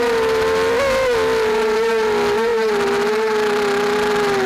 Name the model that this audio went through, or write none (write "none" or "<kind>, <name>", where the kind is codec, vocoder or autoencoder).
none